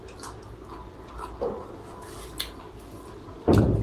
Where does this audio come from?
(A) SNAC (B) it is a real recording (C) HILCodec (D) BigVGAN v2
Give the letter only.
B